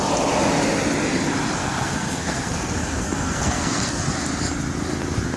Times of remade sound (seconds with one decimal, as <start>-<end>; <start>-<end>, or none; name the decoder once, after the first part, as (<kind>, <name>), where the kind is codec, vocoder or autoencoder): 1.6-4.0 (codec, SNAC)